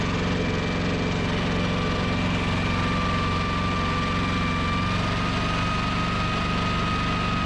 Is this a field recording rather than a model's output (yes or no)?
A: yes